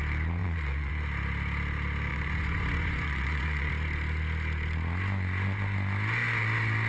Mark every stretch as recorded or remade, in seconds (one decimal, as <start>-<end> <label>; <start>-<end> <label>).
0.0-0.4 recorded; 0.4-0.9 remade; 0.9-2.1 recorded; 2.1-3.7 remade; 3.7-6.9 recorded